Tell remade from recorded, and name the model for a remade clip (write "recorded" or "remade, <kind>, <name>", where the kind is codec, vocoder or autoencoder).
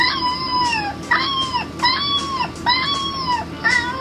recorded